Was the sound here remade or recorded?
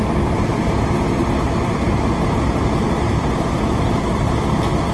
recorded